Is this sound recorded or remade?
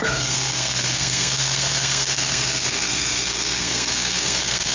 remade